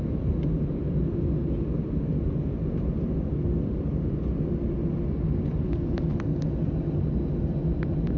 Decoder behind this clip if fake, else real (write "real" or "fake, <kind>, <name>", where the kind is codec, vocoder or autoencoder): real